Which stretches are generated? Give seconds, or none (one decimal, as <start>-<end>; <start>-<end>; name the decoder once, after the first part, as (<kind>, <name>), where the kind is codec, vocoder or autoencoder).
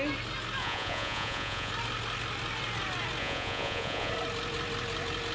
0.6-1.7 (vocoder, Vocos); 3.2-4.1